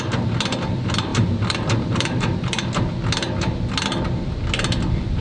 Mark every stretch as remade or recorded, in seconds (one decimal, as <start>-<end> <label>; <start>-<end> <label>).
0.0-1.1 recorded; 1.1-2.7 remade; 2.7-5.2 recorded